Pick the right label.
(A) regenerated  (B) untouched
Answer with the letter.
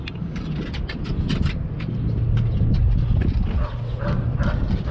B